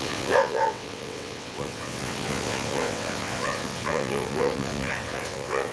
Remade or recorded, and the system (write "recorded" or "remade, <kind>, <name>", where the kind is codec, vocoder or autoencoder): remade, vocoder, WaveNeXt